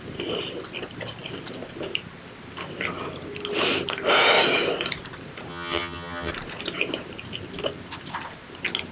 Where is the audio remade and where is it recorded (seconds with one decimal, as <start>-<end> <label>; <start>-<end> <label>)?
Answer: 0.0-5.5 recorded; 5.5-6.3 remade; 6.3-8.9 recorded